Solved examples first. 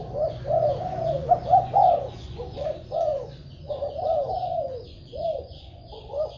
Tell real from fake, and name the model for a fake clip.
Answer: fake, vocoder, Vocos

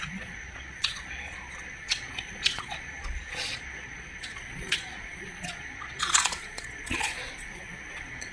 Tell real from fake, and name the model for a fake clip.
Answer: fake, vocoder, Vocos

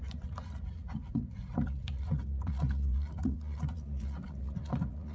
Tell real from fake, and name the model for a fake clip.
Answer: fake, vocoder, Vocos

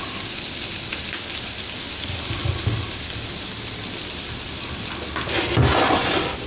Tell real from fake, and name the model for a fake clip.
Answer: real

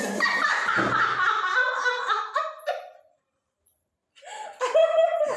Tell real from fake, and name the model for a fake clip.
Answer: fake, vocoder, BigVGAN v2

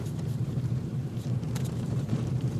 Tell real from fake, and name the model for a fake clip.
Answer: fake, vocoder, BigVGAN v2